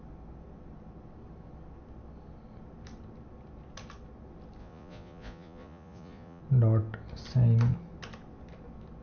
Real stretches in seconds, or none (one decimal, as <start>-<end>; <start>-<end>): 0.0-4.6; 6.4-9.0